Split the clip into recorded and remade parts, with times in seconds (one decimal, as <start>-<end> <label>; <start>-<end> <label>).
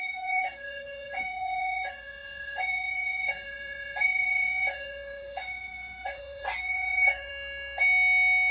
0.0-7.3 remade; 7.3-8.5 recorded